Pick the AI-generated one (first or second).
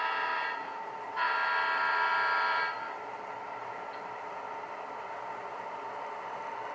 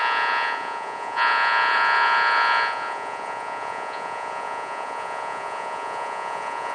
second